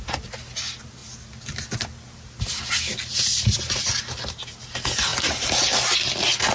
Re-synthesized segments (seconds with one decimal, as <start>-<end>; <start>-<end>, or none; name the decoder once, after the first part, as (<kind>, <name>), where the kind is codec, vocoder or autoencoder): none